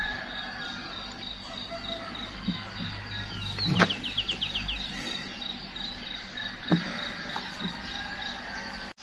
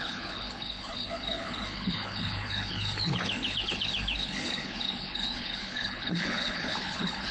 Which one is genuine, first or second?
first